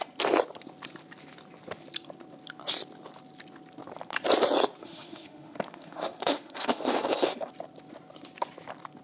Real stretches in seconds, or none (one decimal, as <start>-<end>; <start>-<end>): 0.0-4.8; 7.5-9.0